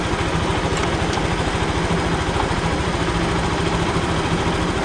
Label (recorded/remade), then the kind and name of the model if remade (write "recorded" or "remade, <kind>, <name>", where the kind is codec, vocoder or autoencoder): recorded